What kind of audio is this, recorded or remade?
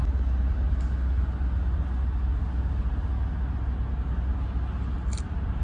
recorded